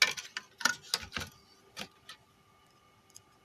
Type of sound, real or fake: real